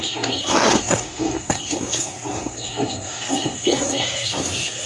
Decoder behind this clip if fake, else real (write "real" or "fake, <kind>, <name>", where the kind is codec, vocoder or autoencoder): fake, codec, SNAC